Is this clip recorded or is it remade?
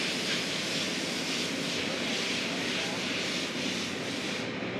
recorded